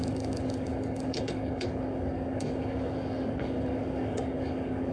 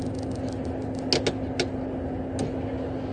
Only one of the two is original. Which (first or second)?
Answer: second